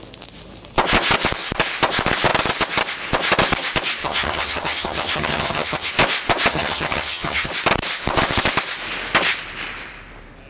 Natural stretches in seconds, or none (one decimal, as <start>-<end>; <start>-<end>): 0.0-4.0; 5.9-6.5; 7.5-10.5

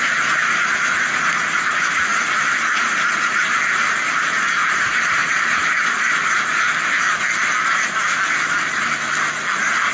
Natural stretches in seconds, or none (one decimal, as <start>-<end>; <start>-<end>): 0.0-9.9

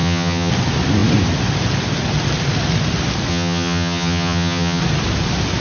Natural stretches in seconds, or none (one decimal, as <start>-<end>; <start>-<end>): 0.5-3.3; 4.8-5.6

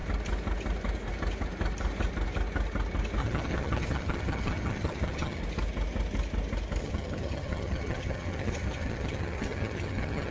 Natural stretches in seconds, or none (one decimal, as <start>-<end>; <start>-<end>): 0.0-3.2; 5.4-6.8